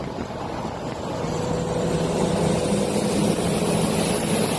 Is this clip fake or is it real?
real